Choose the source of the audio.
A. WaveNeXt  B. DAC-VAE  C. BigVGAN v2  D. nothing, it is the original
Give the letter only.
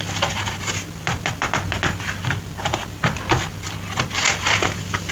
D